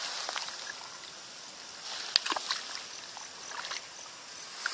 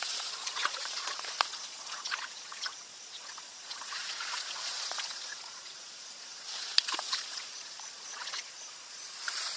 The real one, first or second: first